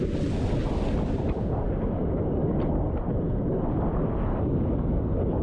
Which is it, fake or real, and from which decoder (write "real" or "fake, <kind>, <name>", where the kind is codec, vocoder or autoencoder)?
real